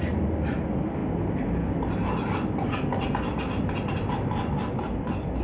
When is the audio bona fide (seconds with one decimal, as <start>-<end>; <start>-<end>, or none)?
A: 1.0-4.1